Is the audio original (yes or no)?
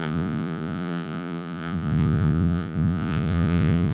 no